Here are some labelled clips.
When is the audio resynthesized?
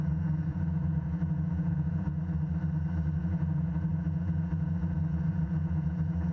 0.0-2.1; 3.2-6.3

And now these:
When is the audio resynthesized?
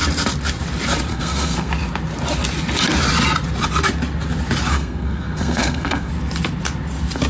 1.1-1.7; 4.7-6.1